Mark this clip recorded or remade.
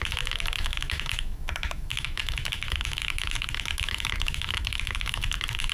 remade